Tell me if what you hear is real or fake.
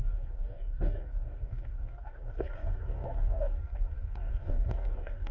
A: fake